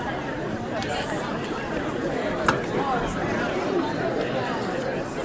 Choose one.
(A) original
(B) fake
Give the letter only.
B